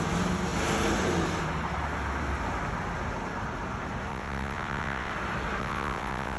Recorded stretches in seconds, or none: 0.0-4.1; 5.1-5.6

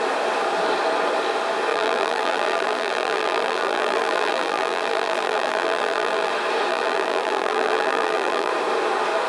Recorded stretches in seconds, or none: 0.0-1.7; 6.3-6.7; 8.5-9.3

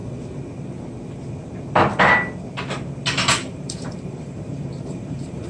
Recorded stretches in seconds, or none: 0.0-3.3

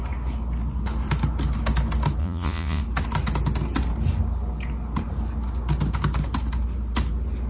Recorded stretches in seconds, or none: 0.0-2.2; 2.8-7.5